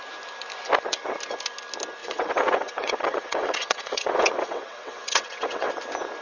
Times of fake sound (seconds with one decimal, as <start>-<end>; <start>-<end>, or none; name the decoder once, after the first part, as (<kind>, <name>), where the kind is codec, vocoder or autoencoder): 2.0-5.7 (vocoder, WaveNeXt)